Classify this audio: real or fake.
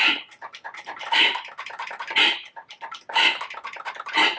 fake